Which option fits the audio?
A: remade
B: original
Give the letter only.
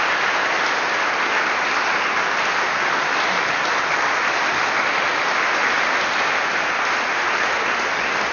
B